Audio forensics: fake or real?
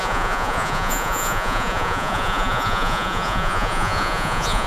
fake